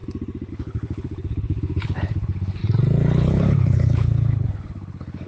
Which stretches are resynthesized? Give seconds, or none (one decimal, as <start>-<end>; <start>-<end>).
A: 0.5-2.6; 3.1-5.3